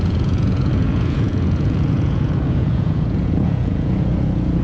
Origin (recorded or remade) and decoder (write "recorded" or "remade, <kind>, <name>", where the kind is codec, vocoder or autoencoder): remade, vocoder, Vocos